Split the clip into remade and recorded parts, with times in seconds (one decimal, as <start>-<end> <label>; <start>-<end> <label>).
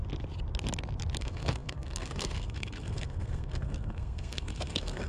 0.0-1.2 recorded; 1.2-5.1 remade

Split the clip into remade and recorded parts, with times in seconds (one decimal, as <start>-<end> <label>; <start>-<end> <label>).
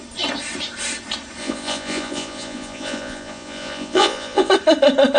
0.0-1.4 recorded; 1.4-4.5 remade; 4.5-5.2 recorded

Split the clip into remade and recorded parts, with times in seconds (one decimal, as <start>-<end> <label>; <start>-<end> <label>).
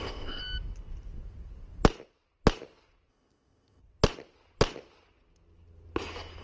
0.0-0.4 remade; 0.4-3.1 recorded; 3.1-3.8 remade; 3.8-6.4 recorded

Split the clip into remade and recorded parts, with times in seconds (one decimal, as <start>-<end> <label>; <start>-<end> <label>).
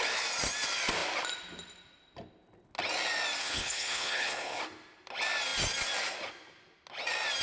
0.0-3.4 recorded; 3.4-4.6 remade; 4.6-7.4 recorded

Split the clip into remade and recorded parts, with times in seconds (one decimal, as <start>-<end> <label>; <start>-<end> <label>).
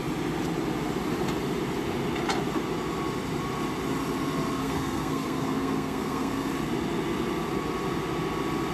0.0-4.6 recorded; 4.6-6.5 remade; 6.5-8.7 recorded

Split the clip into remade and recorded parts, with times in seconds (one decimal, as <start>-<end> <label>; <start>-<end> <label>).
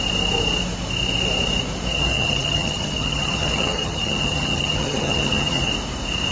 0.0-1.9 recorded; 1.9-5.7 remade; 5.7-6.3 recorded